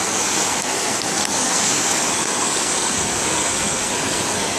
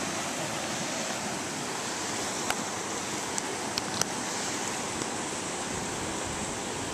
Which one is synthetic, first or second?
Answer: first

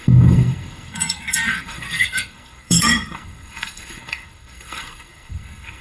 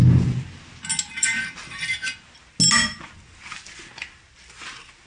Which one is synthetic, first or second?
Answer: first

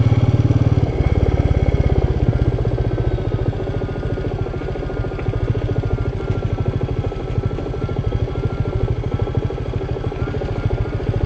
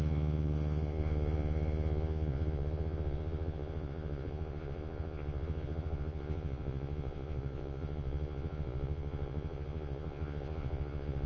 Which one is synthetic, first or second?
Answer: second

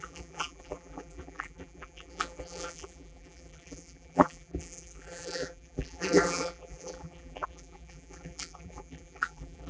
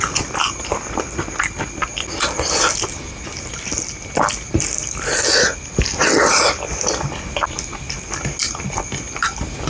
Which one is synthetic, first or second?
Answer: first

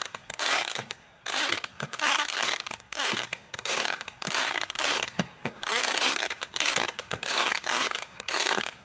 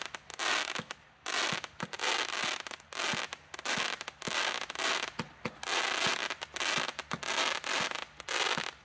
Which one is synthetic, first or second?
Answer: first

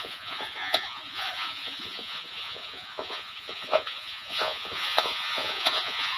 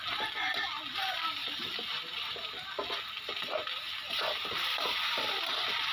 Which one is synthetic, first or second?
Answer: first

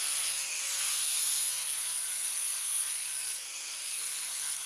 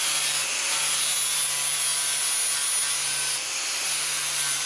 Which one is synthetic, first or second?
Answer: first